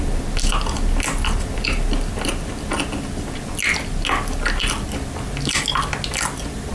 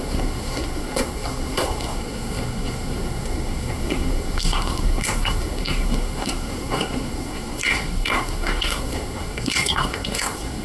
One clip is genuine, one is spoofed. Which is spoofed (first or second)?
second